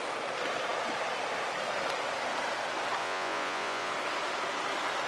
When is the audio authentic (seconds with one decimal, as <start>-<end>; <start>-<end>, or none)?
0.0-3.0; 3.9-5.1